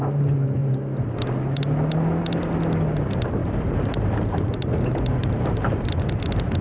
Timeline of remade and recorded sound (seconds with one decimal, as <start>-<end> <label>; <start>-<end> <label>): 0.0-0.6 recorded; 0.6-1.2 remade; 1.2-3.4 recorded; 3.4-4.5 remade; 4.5-5.2 recorded; 5.2-6.1 remade; 6.1-6.6 recorded